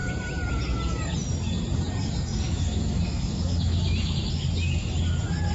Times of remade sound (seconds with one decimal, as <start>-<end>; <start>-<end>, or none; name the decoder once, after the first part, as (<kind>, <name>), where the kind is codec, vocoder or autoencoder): 2.3-4.3 (autoencoder, DAC-VAE)